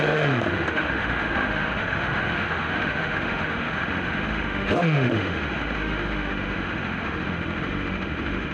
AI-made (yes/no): yes